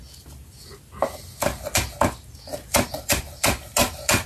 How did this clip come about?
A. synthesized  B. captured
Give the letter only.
B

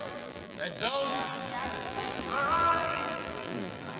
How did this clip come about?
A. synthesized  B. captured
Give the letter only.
A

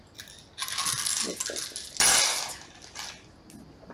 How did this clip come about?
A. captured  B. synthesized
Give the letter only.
A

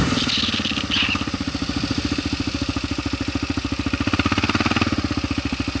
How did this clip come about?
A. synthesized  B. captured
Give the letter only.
A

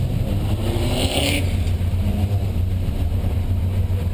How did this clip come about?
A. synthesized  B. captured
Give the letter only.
A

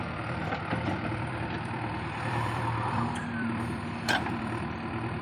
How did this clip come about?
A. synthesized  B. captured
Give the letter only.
A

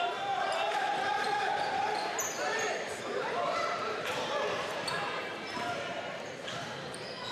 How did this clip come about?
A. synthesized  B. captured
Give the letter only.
A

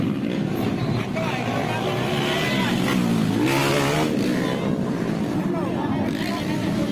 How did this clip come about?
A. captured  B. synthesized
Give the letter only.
A